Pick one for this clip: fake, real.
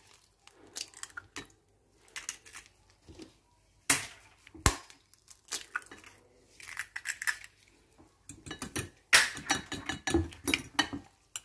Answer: real